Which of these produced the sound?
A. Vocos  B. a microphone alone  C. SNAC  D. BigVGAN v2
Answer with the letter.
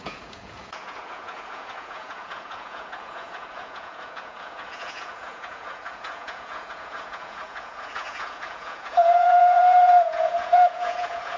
A